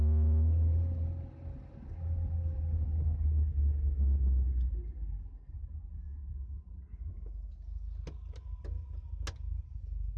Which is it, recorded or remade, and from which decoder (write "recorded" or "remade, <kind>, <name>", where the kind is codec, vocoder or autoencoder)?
recorded